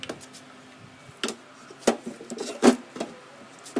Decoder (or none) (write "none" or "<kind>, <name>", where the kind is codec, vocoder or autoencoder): none